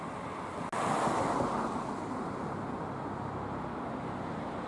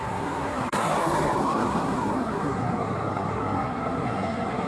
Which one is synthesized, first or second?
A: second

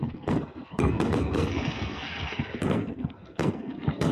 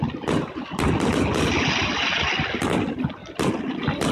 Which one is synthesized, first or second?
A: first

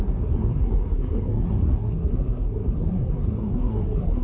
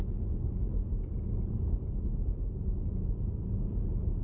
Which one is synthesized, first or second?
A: first